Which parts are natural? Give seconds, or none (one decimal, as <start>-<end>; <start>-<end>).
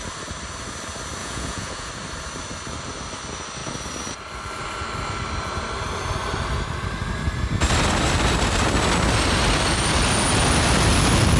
0.0-1.2; 1.9-11.4